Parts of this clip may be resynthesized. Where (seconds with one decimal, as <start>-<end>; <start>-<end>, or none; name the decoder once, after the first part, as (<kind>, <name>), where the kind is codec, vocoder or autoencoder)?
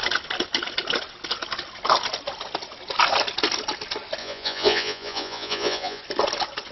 4.2-6.0 (vocoder, Vocos)